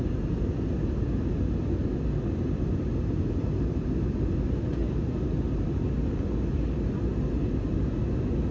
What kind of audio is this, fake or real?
real